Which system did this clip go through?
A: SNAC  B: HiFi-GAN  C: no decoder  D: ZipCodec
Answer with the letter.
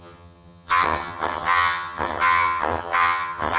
B